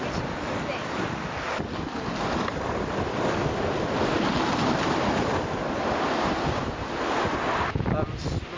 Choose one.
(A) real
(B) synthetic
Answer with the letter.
A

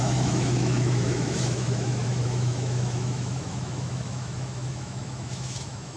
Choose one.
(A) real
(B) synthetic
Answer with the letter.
B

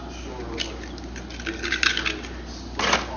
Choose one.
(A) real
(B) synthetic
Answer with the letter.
A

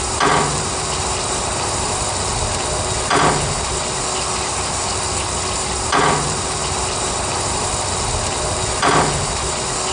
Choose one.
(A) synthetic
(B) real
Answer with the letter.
B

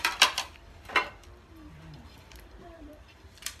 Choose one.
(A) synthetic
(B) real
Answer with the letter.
A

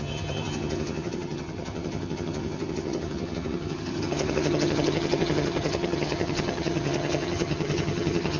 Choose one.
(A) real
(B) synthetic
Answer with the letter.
B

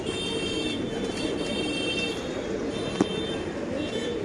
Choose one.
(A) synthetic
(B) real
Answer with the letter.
B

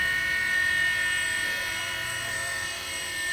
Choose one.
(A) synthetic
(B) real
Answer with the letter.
B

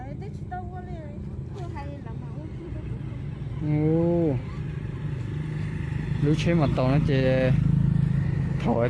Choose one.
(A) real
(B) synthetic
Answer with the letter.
A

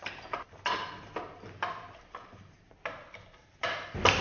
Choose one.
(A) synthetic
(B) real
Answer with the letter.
A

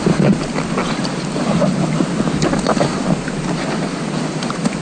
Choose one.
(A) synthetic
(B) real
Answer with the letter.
B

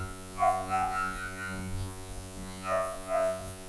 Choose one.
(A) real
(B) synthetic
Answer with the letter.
B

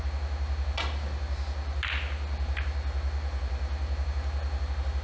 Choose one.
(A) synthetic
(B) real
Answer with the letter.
B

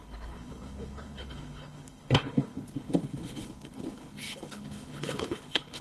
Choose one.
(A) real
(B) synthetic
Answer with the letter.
B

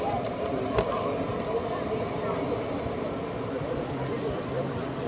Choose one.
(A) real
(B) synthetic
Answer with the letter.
B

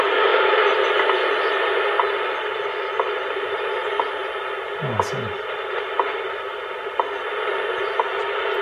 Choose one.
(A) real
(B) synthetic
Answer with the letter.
A